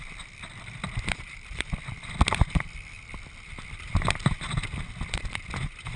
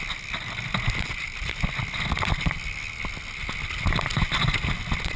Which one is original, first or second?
second